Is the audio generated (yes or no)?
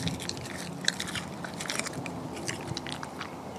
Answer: yes